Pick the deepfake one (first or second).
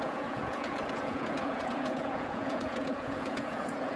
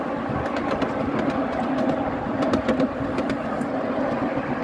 first